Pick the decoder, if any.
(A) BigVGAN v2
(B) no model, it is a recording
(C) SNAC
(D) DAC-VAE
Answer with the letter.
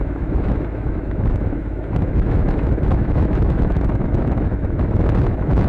D